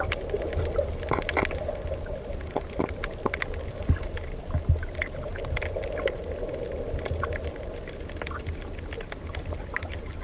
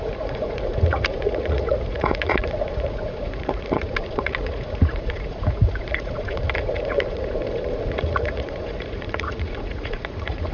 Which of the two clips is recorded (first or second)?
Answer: first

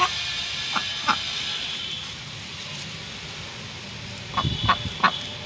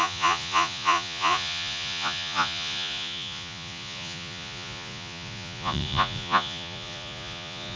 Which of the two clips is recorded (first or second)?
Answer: first